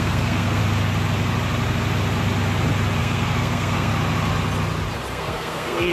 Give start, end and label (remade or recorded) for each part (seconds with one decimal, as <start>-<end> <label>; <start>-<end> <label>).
0.0-0.6 remade; 0.6-3.0 recorded; 3.0-3.9 remade; 3.9-5.1 recorded; 5.1-5.9 remade